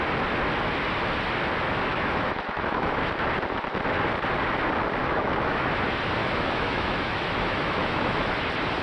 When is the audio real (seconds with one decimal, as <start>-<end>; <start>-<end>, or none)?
0.0-1.9; 3.0-5.0; 5.7-6.2; 8.3-8.8